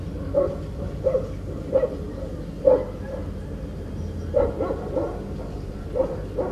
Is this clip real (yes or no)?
yes